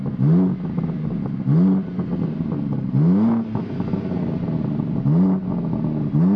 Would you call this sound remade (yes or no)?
no